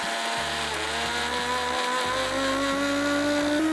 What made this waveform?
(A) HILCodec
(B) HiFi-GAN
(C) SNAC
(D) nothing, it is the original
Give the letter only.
D